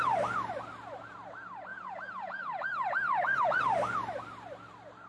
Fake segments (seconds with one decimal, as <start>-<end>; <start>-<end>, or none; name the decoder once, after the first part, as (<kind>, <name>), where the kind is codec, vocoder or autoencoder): 1.7-3.6 (vocoder, Vocos)